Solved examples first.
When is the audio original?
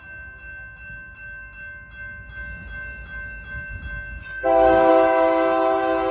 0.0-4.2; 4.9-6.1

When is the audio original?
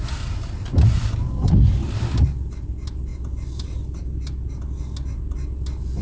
0.0-6.0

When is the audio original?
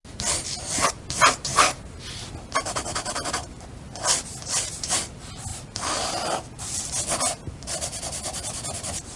0.0-1.5; 2.0-9.2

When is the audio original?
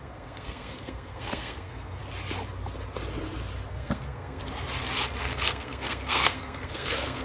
2.0-3.7; 4.4-5.2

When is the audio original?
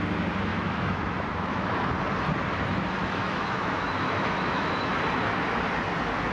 0.0-0.5; 1.8-3.0; 4.9-6.3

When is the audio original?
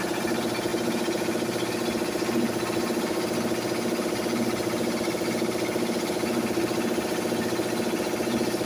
0.0-8.7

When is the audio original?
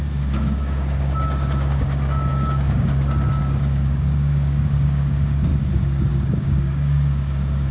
5.5-6.1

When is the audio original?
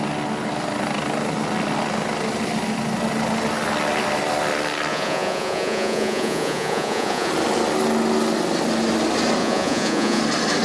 0.0-4.9; 7.3-9.4; 10.2-10.6